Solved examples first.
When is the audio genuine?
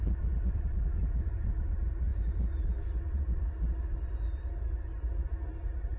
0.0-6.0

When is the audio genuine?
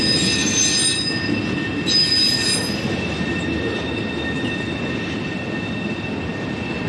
0.0-6.9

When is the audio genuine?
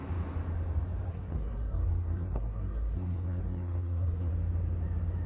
0.0-1.1; 4.3-5.3